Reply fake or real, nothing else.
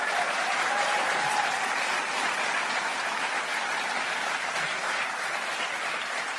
fake